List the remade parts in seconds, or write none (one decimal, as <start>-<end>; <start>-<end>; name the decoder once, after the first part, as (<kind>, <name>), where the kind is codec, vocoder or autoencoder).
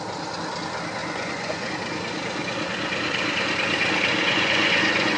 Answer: 1.0-1.7 (vocoder, Vocos); 4.2-5.2